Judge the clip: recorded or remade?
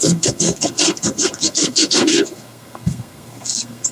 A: remade